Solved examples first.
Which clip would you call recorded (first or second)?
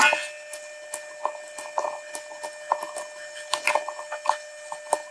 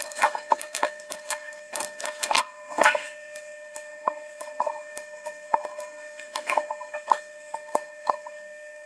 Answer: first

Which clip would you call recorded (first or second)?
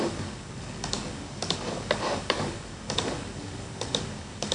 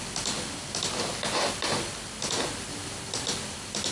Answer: second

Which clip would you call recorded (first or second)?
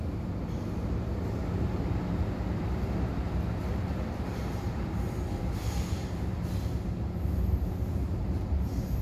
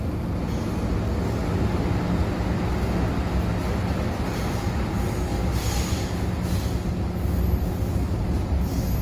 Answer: second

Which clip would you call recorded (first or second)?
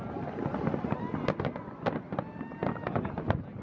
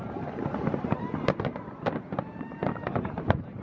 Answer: first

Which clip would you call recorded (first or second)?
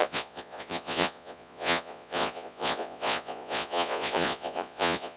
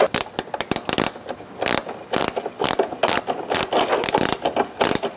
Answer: second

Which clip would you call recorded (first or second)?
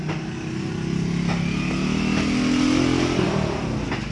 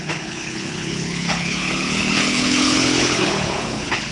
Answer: first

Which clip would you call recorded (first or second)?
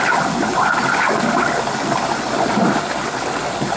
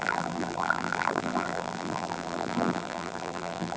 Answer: first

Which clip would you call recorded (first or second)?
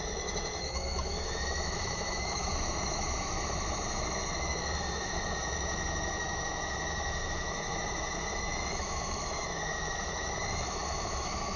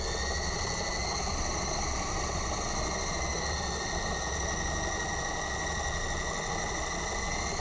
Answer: second